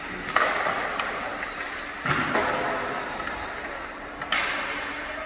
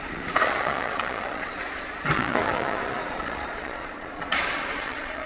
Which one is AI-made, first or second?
second